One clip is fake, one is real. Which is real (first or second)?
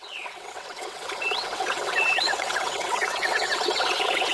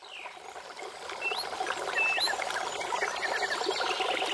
second